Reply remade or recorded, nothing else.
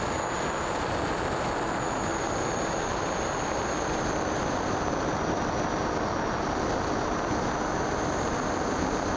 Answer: recorded